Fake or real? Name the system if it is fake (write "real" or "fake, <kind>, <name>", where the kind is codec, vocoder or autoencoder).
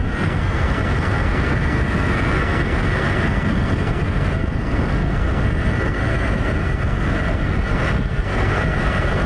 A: fake, codec, SNAC